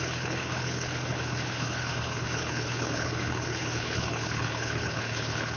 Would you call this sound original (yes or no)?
no